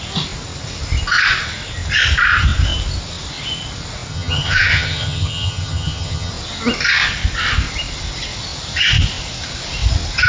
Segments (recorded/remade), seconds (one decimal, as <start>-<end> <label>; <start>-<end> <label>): 0.0-4.1 recorded; 4.1-6.3 remade; 6.3-10.3 recorded